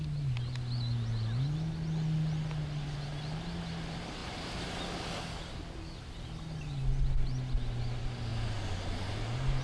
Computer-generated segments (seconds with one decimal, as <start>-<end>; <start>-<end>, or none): none